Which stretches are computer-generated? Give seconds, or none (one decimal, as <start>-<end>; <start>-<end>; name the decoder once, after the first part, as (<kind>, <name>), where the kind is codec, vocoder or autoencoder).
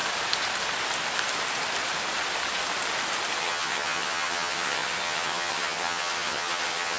3.4-7.0 (vocoder, HiFi-GAN)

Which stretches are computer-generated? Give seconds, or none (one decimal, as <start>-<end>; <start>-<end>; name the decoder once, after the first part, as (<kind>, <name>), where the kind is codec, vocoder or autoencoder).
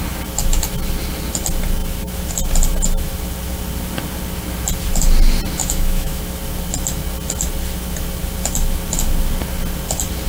5.6-6.2 (autoencoder, DAC-VAE)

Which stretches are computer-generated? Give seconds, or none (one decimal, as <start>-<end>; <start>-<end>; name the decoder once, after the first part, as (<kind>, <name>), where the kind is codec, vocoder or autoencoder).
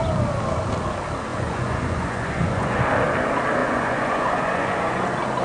1.3-2.8 (vocoder, Vocos); 3.6-5.0